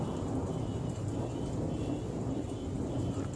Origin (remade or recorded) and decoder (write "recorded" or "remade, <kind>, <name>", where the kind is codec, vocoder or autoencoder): remade, vocoder, BigVGAN v2